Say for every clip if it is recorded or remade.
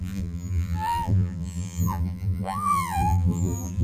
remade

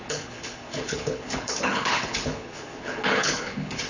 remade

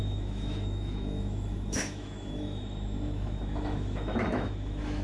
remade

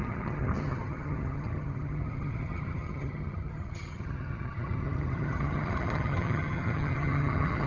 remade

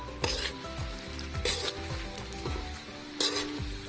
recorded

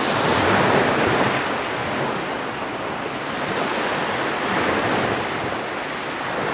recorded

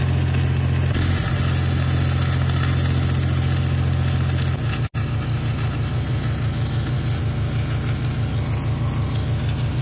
recorded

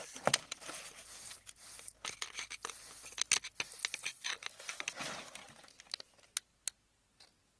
recorded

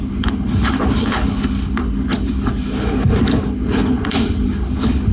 remade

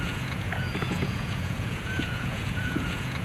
remade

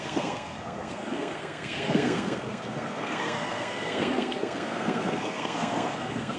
remade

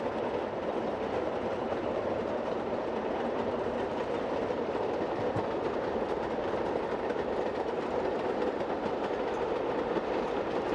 remade